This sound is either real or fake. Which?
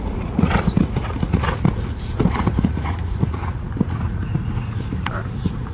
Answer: fake